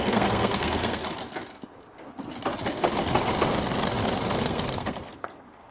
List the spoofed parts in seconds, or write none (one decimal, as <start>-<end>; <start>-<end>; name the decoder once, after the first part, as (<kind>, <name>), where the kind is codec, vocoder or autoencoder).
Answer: 0.0-1.0 (codec, SNAC); 4.4-5.7